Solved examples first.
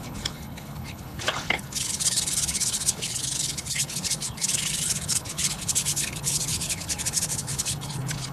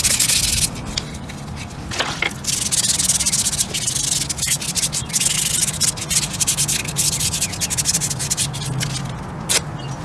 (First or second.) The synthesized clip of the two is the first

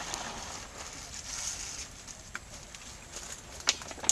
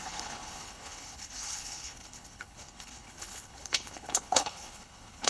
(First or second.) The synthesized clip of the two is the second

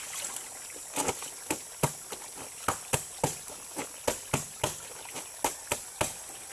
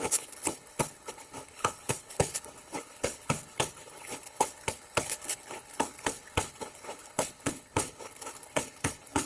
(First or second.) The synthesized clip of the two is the second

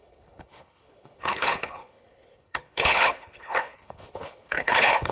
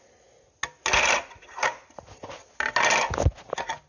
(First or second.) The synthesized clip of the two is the first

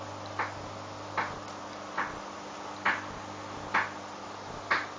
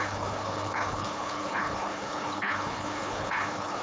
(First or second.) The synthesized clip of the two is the second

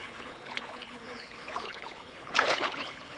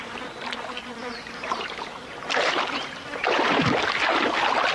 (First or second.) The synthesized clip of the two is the first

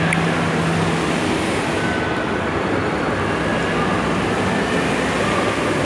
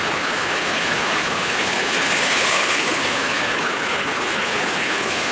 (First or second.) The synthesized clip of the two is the second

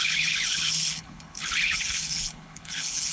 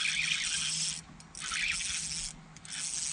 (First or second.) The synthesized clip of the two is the first